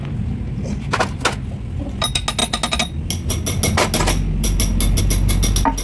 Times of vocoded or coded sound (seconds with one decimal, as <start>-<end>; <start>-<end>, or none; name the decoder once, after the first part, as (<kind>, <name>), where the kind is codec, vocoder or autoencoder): none